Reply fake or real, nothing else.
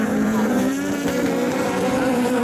fake